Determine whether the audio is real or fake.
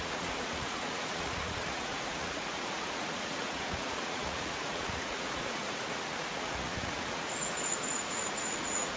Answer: fake